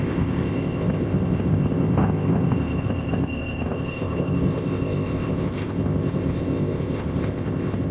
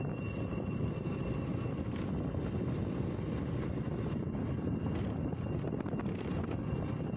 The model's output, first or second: first